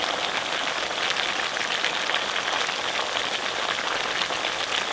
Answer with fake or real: real